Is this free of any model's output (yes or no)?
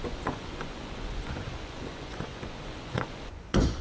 no